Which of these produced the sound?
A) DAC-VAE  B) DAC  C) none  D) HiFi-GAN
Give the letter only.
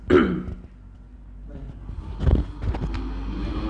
C